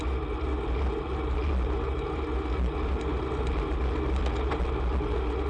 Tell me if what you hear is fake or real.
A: real